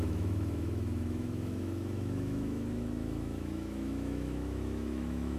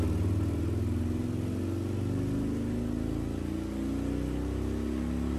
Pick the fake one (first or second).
first